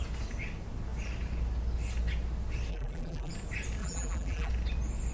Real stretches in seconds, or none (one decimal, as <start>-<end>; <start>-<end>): 0.0-2.7; 3.3-3.8; 4.5-5.1